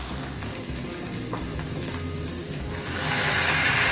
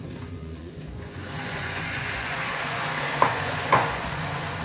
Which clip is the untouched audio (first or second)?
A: first